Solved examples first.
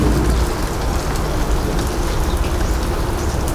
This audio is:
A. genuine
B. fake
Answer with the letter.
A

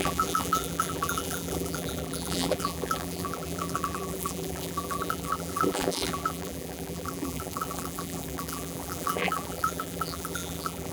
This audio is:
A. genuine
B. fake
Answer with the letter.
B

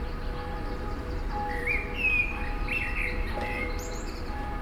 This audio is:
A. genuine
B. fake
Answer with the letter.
B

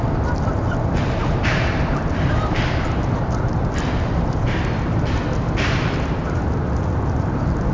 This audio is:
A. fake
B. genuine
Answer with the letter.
B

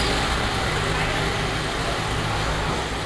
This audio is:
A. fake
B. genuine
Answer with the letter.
B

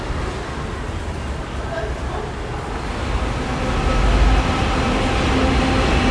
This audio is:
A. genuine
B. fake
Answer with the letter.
A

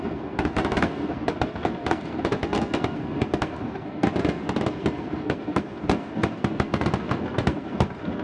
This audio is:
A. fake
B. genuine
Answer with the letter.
A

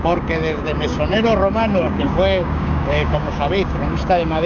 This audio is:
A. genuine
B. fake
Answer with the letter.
B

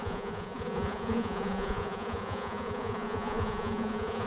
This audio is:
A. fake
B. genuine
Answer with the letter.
A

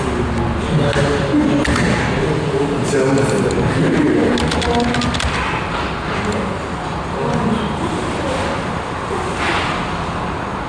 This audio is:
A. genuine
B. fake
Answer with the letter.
A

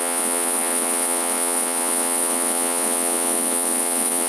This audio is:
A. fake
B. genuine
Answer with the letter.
A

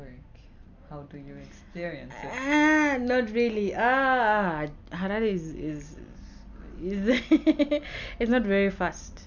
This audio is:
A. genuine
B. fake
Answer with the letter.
A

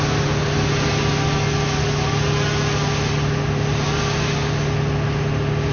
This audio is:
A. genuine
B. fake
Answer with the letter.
A